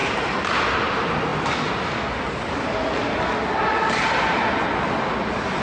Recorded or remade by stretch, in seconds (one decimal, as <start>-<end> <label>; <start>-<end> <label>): 0.0-5.6 recorded